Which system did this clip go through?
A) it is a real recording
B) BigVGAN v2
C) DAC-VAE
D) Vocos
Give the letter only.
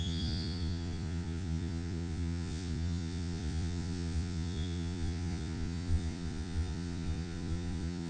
D